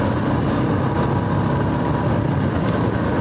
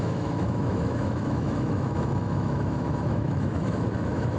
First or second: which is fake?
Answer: second